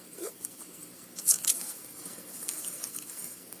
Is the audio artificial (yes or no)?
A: yes